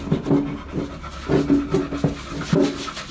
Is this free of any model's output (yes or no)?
yes